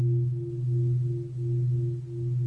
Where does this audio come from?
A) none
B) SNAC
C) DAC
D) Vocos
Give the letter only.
A